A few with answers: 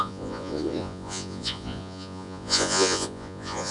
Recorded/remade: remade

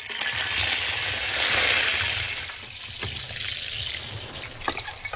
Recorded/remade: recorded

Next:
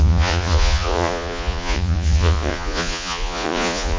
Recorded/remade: remade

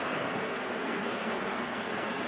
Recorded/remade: remade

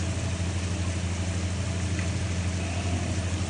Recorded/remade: recorded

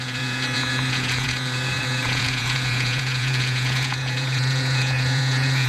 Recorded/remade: remade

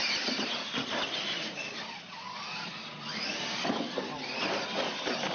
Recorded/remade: recorded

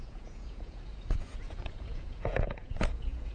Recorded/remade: remade